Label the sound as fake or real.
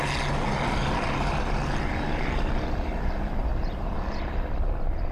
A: real